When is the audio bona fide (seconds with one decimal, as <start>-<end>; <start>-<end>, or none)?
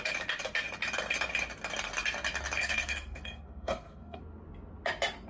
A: 0.0-2.6; 4.2-5.3